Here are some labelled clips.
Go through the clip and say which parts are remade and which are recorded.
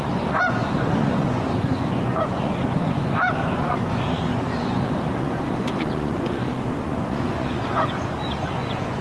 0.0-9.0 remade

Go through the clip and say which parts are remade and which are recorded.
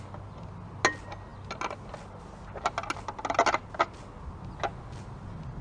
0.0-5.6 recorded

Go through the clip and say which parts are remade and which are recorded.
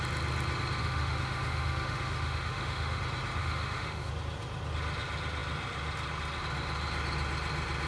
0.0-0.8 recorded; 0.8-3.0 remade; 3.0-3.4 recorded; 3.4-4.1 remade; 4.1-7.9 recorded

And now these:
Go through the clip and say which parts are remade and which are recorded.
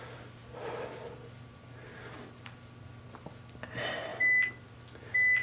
0.0-5.4 recorded